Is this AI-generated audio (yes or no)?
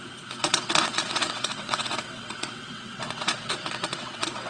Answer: yes